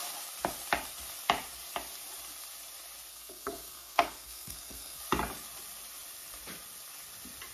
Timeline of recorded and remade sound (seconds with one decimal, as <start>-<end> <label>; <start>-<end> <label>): 0.0-3.1 recorded; 3.1-5.0 remade; 5.0-7.5 recorded